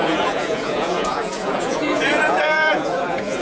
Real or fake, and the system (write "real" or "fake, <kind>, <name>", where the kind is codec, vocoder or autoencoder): fake, vocoder, Vocos